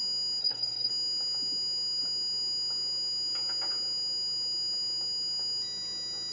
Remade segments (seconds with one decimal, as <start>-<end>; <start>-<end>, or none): 0.4-0.9